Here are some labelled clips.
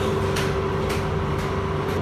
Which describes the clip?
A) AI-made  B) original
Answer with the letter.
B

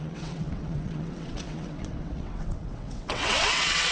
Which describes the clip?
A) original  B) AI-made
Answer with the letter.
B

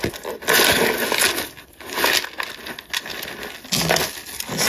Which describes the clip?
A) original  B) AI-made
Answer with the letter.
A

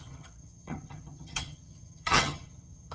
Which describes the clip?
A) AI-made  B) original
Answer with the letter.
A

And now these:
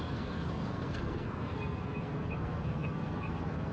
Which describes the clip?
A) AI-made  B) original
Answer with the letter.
A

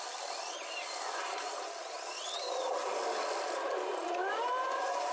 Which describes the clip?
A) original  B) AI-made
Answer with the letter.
A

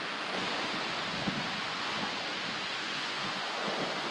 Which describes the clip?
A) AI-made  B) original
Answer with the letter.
A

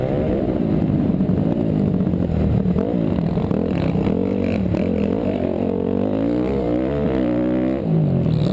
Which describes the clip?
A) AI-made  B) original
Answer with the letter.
B